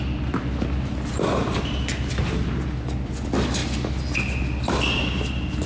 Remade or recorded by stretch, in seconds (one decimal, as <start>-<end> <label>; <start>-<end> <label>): 0.0-5.7 recorded